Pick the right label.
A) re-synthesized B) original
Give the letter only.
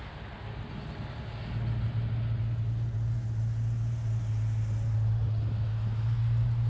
B